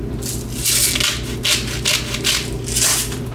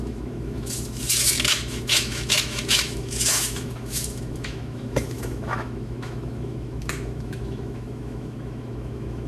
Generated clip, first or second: second